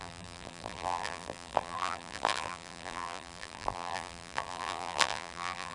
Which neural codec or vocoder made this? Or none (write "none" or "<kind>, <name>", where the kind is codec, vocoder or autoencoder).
vocoder, BigVGAN v2